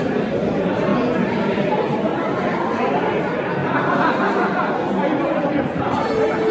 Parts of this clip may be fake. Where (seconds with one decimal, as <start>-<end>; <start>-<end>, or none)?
0.0-0.9; 1.5-2.1; 3.2-3.6; 5.2-6.5